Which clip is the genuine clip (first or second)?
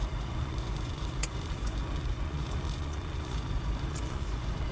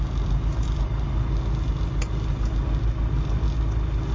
second